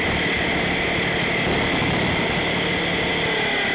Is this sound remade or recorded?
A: recorded